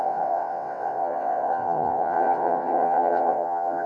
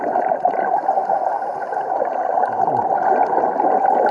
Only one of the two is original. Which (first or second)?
second